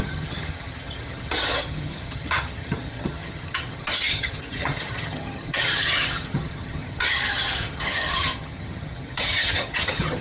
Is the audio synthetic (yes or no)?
yes